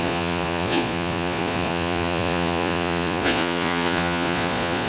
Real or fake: fake